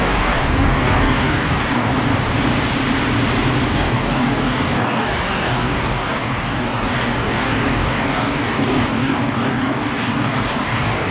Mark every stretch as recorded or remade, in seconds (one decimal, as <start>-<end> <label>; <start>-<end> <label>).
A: 0.0-1.9 remade; 1.9-3.7 recorded; 3.7-11.1 remade